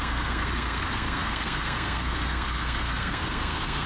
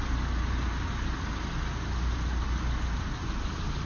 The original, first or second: second